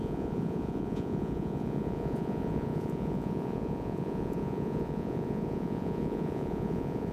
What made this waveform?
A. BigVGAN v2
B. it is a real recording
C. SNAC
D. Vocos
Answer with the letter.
D